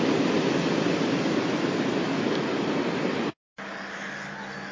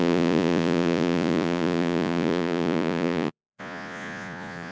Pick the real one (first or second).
first